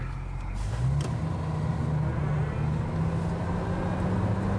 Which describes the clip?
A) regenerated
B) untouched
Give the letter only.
B